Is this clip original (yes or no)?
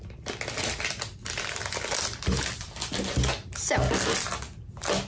yes